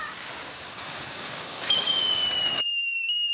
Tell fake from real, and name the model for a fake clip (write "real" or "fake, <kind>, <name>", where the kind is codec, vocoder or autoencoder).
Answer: fake, codec, DAC